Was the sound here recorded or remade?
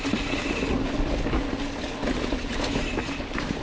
recorded